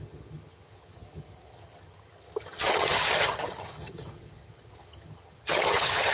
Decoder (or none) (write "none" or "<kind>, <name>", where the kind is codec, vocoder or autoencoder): vocoder, HiFi-GAN